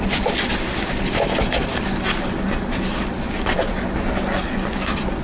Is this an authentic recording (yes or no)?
yes